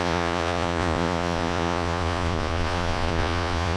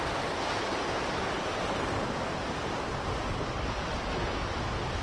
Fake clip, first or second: first